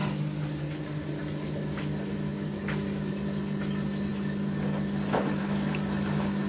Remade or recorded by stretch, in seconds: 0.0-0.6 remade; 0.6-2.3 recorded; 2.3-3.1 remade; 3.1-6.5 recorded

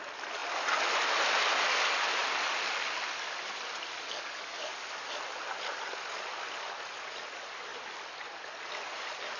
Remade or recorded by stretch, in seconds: 0.0-9.4 recorded

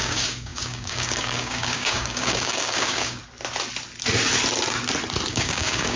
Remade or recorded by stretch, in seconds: 0.0-3.2 remade; 3.2-5.3 recorded; 5.3-6.0 remade